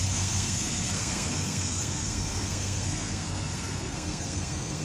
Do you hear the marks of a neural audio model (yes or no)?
yes